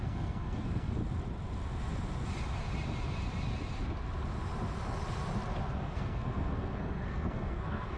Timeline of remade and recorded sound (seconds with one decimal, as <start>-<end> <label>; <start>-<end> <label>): 0.0-1.0 remade; 1.0-5.8 recorded; 5.8-8.0 remade